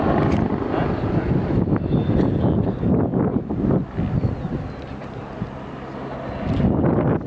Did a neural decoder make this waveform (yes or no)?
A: no